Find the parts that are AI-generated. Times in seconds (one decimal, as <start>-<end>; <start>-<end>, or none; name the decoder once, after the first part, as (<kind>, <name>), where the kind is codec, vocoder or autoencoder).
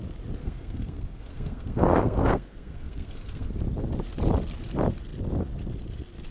0.4-3.5 (codec, SNAC)